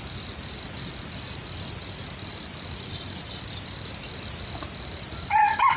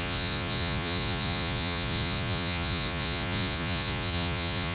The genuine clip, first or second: first